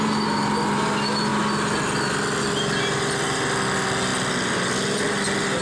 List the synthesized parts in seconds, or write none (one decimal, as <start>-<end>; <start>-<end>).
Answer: none